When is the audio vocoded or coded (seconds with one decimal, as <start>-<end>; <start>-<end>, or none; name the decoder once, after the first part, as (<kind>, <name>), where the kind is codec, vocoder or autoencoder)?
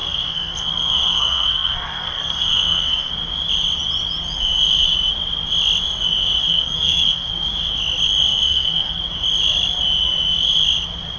0.0-3.1 (codec, SNAC); 6.4-7.3; 8.3-9.0